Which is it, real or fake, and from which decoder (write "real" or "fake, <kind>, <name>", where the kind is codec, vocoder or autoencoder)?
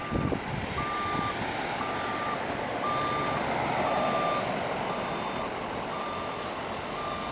real